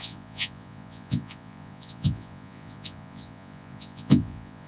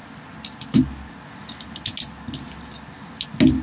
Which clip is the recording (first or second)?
second